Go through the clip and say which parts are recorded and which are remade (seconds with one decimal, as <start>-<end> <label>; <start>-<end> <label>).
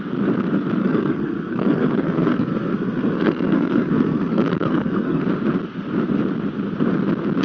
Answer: 0.0-0.8 recorded; 0.8-5.2 remade; 5.2-7.4 recorded